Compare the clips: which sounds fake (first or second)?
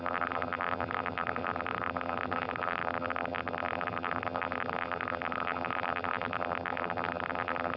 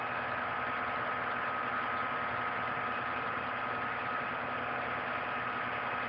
first